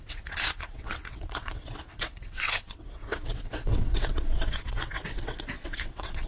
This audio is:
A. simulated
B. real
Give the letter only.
A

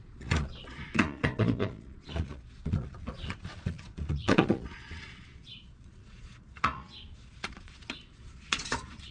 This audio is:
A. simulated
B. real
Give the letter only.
A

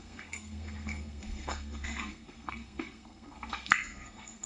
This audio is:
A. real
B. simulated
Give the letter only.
B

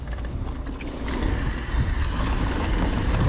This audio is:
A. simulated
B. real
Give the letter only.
B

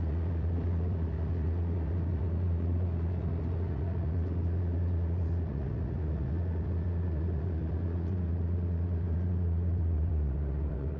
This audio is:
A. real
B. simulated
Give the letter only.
B